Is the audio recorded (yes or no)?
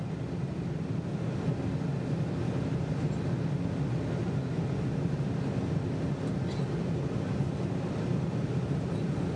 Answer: yes